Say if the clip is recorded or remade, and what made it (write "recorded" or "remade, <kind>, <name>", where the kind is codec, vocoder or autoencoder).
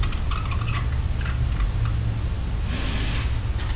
recorded